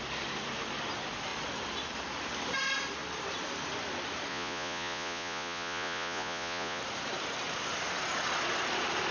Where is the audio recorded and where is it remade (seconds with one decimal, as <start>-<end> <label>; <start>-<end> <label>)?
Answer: 0.0-4.3 recorded; 4.3-6.8 remade; 6.8-9.1 recorded